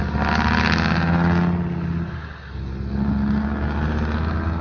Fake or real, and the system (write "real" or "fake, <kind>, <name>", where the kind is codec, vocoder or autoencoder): real